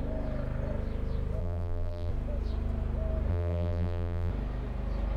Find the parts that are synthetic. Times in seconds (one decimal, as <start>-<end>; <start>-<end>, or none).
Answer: 1.4-2.1; 3.3-4.3